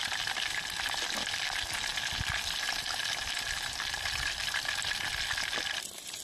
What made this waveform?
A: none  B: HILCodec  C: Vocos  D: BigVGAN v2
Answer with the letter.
A